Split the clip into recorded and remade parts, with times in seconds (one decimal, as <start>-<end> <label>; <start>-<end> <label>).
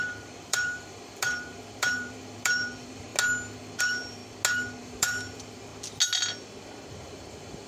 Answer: 0.0-3.1 remade; 3.1-3.8 recorded; 3.8-4.2 remade; 4.2-4.8 recorded; 4.8-5.7 remade; 5.7-6.9 recorded; 6.9-7.7 remade